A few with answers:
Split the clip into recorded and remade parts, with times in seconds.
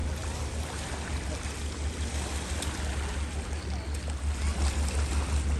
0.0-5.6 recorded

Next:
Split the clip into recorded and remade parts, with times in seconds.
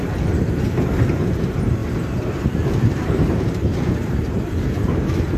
0.0-1.8 recorded; 1.8-5.0 remade; 5.0-5.4 recorded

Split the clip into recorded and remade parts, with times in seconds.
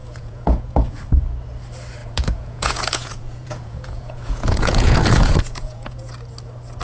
0.0-1.0 remade; 1.0-2.0 recorded; 2.0-6.1 remade; 6.1-6.8 recorded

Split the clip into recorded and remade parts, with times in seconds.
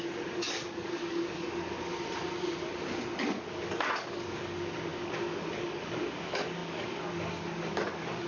0.0-1.9 remade; 1.9-3.2 recorded; 3.2-8.3 remade